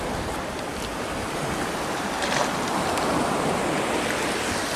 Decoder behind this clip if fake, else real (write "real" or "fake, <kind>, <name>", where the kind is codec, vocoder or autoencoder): real